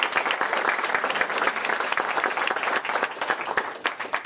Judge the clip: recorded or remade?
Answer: recorded